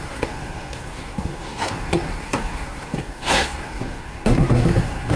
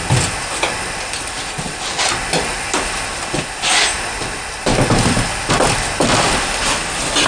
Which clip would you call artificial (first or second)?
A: first